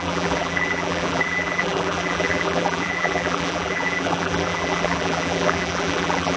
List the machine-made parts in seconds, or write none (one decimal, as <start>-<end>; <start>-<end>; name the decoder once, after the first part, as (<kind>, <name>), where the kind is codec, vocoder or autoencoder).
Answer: 0.0-6.4 (vocoder, BigVGAN v2)